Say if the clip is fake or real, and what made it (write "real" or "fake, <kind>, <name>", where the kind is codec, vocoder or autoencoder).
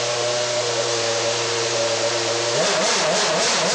fake, vocoder, BigVGAN v2